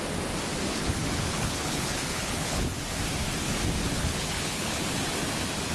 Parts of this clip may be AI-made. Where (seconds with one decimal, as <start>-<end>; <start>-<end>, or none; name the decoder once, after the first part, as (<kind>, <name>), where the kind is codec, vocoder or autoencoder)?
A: 0.7-2.8 (codec, HILCodec); 3.8-4.8